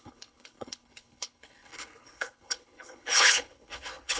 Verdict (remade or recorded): remade